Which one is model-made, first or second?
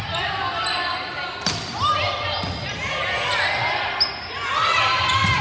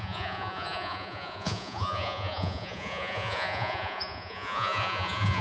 second